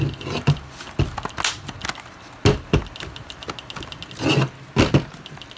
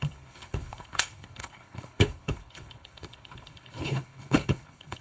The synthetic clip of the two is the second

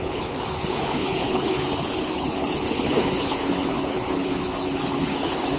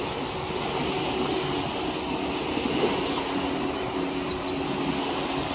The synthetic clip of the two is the first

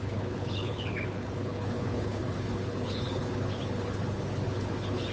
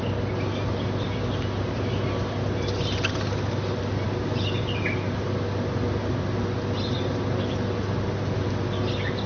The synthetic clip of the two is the first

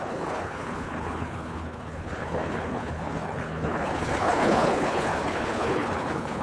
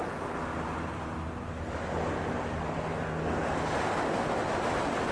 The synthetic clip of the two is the first